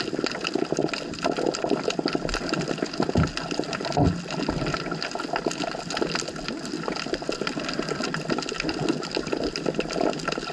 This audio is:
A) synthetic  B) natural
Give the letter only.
B